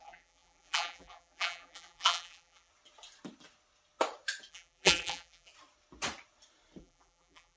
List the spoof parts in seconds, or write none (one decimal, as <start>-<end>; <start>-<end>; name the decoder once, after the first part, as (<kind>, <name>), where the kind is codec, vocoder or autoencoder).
0.0-2.7 (vocoder, BigVGAN v2); 4.5-5.5; 6.8-7.6